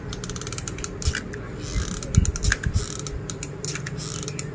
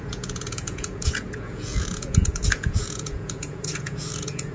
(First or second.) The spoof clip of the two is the second